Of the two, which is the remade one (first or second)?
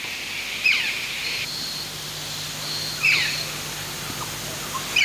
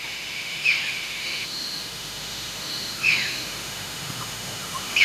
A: second